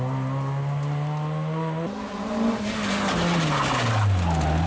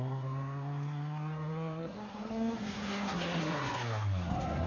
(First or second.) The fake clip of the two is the second